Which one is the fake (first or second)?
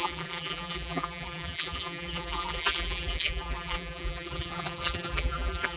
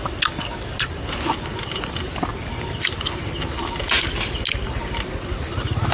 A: first